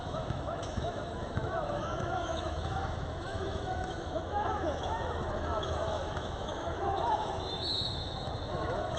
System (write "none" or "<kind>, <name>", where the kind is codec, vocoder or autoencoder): autoencoder, DAC-VAE